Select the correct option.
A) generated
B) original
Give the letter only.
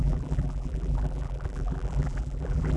A